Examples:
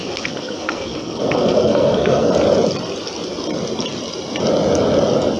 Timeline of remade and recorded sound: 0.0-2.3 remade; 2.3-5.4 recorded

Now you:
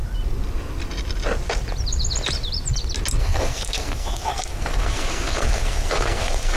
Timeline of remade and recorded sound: 0.0-3.2 recorded; 3.2-6.6 remade

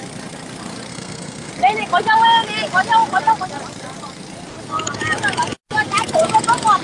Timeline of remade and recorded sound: 0.0-0.9 recorded; 0.9-1.5 remade; 1.5-6.8 recorded

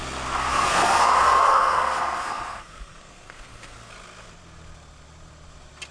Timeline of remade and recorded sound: 0.0-0.5 recorded; 0.5-3.9 remade; 3.9-5.9 recorded

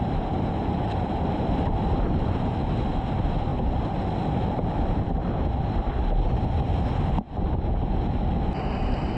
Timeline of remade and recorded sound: 0.0-9.2 recorded

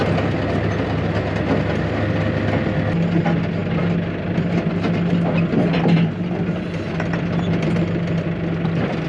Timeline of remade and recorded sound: 0.0-9.1 recorded

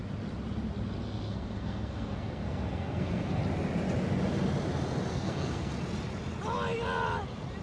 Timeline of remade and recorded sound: 0.0-1.0 recorded; 1.0-3.4 remade; 3.4-5.1 recorded; 5.1-5.7 remade; 5.7-7.6 recorded